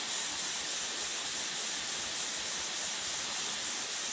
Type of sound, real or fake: fake